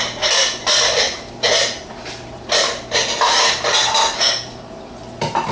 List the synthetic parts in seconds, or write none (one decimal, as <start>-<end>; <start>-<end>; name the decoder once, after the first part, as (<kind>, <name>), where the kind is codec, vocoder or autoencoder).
none